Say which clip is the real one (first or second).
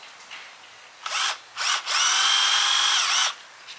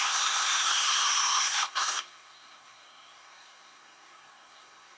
first